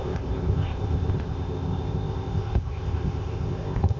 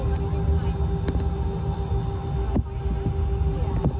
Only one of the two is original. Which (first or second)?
second